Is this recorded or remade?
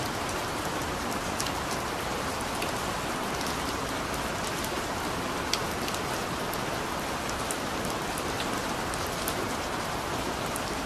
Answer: recorded